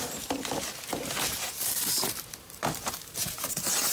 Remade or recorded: remade